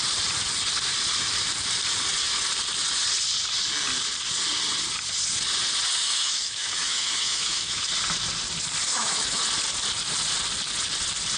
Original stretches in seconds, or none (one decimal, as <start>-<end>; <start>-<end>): 0.0-6.0; 7.9-8.9; 9.4-11.4